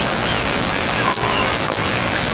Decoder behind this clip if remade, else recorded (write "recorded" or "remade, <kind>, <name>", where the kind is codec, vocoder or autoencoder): remade, vocoder, BigVGAN v2